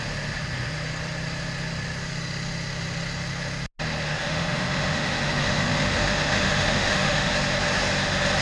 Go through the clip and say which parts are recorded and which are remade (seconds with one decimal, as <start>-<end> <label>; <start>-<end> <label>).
0.0-4.2 recorded; 4.2-7.3 remade; 7.3-8.4 recorded